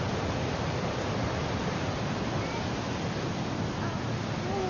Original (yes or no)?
yes